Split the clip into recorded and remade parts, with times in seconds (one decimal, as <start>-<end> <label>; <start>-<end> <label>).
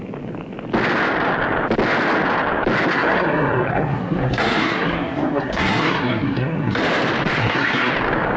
0.0-2.9 recorded; 2.9-6.8 remade; 6.8-7.4 recorded; 7.4-7.9 remade; 7.9-8.4 recorded